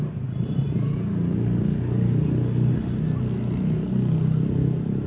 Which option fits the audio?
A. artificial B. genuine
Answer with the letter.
B